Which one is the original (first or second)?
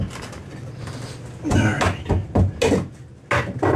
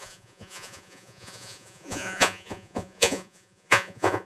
first